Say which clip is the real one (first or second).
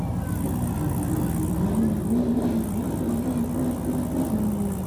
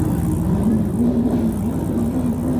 first